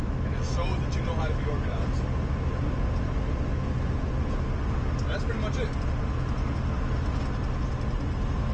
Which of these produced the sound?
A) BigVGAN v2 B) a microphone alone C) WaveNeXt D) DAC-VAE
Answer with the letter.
B